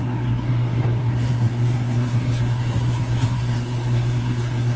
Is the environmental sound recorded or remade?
remade